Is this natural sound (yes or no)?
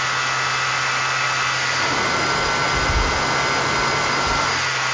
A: yes